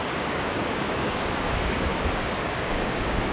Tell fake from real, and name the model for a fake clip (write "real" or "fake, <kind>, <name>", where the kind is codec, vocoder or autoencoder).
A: fake, codec, DAC